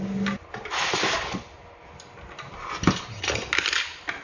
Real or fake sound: real